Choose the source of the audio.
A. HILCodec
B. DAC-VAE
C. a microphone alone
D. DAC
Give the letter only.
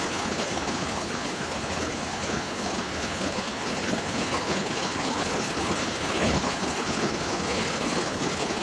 A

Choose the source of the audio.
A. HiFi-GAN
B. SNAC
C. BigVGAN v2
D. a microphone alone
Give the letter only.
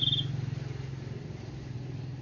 D